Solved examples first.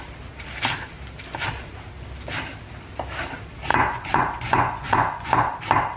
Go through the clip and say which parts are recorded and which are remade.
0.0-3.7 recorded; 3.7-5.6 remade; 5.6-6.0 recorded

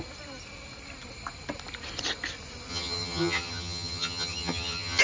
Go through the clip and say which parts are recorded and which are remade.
0.0-2.7 recorded; 2.7-5.0 remade

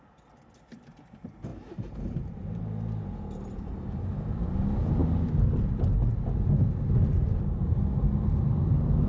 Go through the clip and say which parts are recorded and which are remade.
0.0-9.1 recorded